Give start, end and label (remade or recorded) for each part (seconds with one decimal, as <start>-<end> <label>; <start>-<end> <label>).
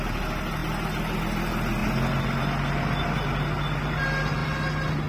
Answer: 0.0-5.1 recorded